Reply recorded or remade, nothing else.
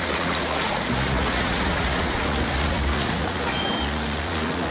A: remade